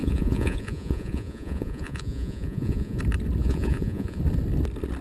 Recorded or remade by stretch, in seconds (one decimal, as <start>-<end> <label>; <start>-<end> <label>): 0.0-3.0 remade; 3.0-3.4 recorded; 3.4-4.2 remade; 4.2-5.0 recorded